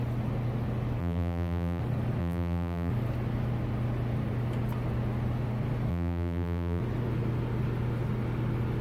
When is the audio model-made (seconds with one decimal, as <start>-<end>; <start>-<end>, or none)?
1.0-1.8; 2.2-2.9; 5.9-6.8